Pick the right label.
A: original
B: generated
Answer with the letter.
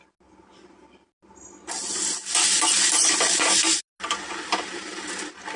A